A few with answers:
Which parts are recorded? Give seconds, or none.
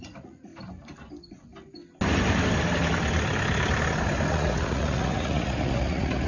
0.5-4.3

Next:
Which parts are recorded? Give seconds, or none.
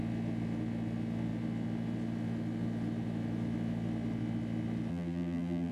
0.0-4.9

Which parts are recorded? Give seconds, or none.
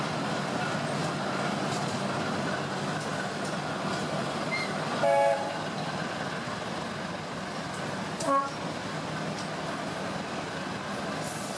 0.0-11.6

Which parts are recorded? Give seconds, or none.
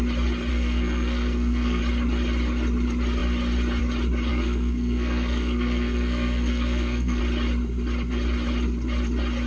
0.0-0.5; 1.8-4.3; 7.2-9.5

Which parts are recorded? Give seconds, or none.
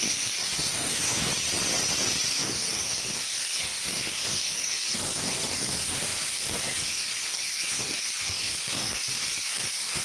1.3-2.3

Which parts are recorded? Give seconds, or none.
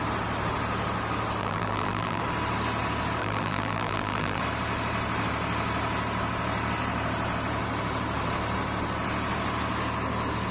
0.0-1.4; 2.2-3.2; 4.4-10.5